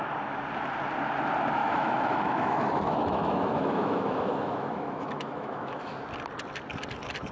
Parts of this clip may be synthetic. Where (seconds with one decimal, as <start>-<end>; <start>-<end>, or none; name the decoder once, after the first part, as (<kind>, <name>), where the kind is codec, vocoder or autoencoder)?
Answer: 1.6-6.0 (autoencoder, DAC-VAE)